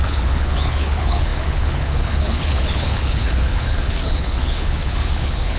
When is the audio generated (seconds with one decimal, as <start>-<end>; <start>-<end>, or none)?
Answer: 0.0-5.6